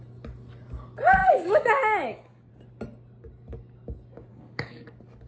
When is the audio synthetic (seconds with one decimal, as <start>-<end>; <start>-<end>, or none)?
1.2-2.5; 4.3-4.8